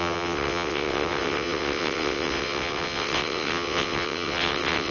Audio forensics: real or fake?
fake